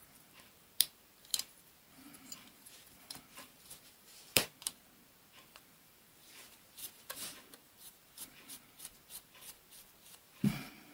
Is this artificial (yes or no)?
yes